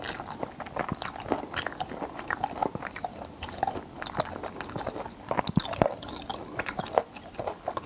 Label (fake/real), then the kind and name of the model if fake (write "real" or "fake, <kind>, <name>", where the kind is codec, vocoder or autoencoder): real